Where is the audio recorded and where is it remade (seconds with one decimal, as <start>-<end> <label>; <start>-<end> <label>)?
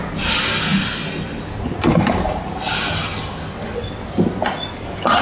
0.0-5.2 recorded